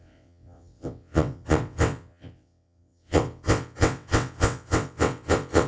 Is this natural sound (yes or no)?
no